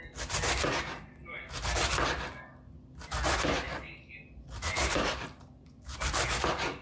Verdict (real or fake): real